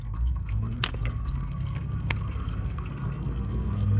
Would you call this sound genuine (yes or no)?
no